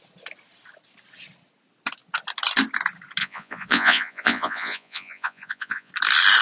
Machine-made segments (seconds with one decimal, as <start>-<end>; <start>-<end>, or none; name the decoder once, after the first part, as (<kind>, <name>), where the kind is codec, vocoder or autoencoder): 3.2-5.9 (vocoder, Vocos)